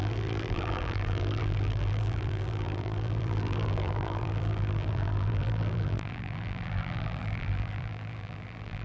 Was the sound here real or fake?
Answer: fake